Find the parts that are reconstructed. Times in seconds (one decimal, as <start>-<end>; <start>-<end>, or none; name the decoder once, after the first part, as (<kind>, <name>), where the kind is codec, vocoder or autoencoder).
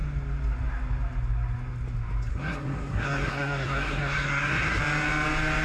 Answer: 2.3-4.8 (codec, SNAC)